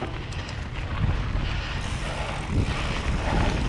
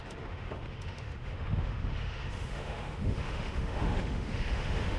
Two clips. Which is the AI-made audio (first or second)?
second